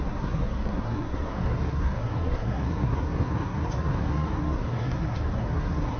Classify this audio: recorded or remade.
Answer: remade